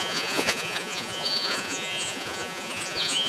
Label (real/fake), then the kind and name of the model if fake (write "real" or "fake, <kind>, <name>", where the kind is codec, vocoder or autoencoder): fake, vocoder, Vocos